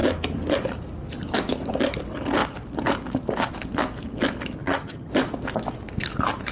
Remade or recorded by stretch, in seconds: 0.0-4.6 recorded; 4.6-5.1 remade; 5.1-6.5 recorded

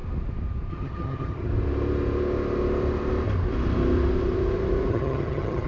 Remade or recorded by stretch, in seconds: 0.0-0.7 recorded; 0.7-1.5 remade; 1.5-4.9 recorded; 4.9-5.7 remade

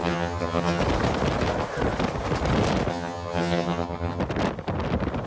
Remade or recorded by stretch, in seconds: 0.0-0.8 remade; 0.8-2.9 recorded; 2.9-4.2 remade; 4.2-5.3 recorded

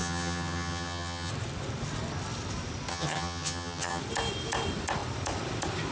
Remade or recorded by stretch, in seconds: 0.0-1.3 remade; 1.3-2.9 recorded; 2.9-4.0 remade; 4.0-5.9 recorded

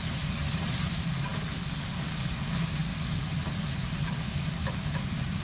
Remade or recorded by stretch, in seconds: 0.0-5.4 recorded

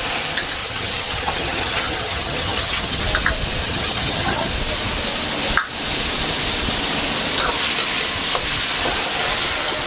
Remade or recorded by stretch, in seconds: 0.0-0.6 recorded; 0.6-3.0 remade; 3.0-3.6 recorded; 3.6-4.5 remade; 4.5-9.9 recorded

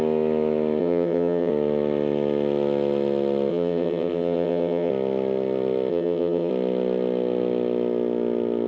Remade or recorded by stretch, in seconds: 0.0-0.8 recorded; 0.8-1.5 remade; 1.5-3.5 recorded; 3.5-4.9 remade; 4.9-5.9 recorded; 5.9-6.5 remade; 6.5-8.7 recorded

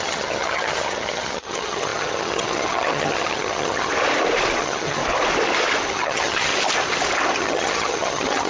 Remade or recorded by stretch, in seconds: 0.0-3.9 remade; 3.9-4.6 recorded; 4.6-5.0 remade; 5.0-5.9 recorded; 5.9-6.5 remade; 6.5-7.4 recorded; 7.4-8.5 remade